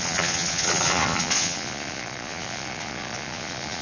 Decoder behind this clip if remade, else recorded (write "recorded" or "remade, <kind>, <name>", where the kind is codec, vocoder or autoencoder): remade, vocoder, Vocos